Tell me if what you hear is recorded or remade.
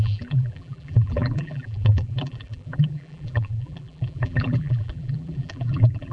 remade